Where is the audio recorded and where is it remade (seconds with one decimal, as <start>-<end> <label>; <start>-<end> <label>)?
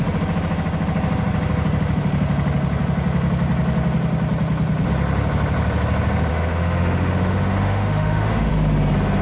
0.0-6.3 recorded; 6.3-8.5 remade; 8.5-9.2 recorded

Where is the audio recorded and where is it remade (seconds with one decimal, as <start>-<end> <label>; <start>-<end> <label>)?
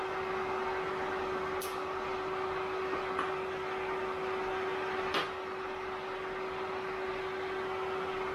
0.0-8.3 recorded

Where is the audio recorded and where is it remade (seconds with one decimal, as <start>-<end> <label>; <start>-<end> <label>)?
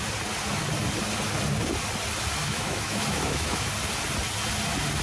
0.0-2.4 recorded; 2.4-3.7 remade; 3.7-5.0 recorded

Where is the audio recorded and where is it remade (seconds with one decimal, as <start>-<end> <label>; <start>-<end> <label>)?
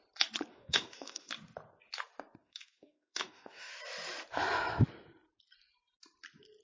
0.0-0.5 recorded; 0.5-1.3 remade; 1.3-2.4 recorded; 2.4-3.7 remade; 3.7-6.6 recorded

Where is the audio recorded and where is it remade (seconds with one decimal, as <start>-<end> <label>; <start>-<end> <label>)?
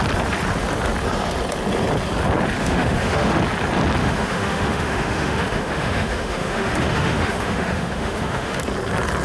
0.0-2.6 recorded; 2.6-3.4 remade; 3.4-4.0 recorded; 4.0-8.6 remade; 8.6-9.2 recorded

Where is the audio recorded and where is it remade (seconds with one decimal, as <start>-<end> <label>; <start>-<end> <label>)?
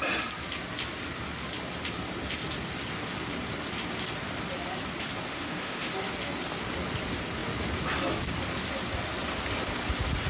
0.0-5.3 recorded; 5.3-5.9 remade; 5.9-10.3 recorded